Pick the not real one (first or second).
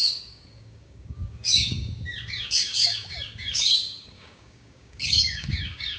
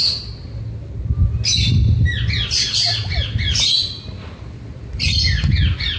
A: first